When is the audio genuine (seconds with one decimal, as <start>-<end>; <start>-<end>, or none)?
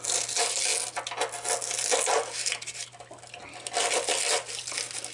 0.0-5.1